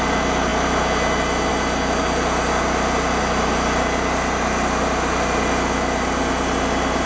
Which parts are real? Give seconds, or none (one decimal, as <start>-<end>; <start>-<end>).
0.0-7.1